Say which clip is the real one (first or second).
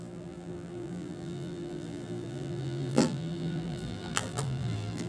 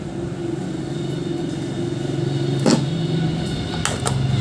second